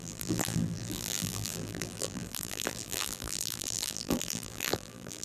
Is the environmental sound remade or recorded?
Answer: remade